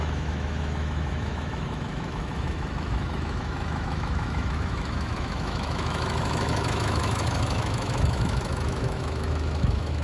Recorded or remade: remade